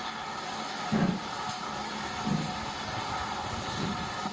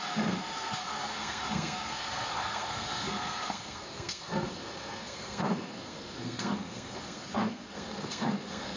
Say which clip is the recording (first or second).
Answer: first